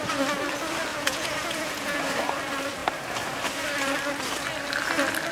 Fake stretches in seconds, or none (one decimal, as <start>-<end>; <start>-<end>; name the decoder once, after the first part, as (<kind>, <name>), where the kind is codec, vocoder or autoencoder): 0.9-2.0 (vocoder, Vocos)